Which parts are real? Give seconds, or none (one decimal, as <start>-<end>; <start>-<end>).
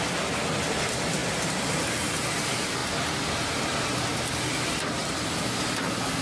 0.0-6.2